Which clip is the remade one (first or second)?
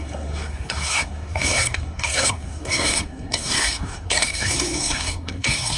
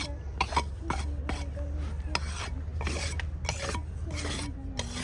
first